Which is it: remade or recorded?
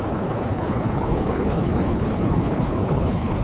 remade